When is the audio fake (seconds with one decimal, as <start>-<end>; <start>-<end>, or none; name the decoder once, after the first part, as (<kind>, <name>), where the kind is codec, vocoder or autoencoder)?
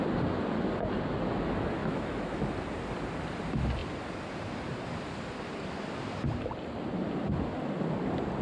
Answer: 1.8-2.4 (autoencoder, DAC-VAE)